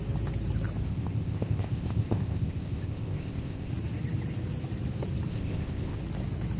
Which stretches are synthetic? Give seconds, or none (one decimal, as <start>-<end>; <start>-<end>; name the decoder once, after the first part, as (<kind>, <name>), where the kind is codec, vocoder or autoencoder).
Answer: 0.9-3.7 (codec, ZipCodec); 5.3-6.0